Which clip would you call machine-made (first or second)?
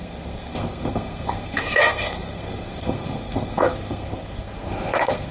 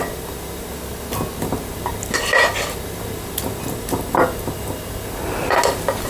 first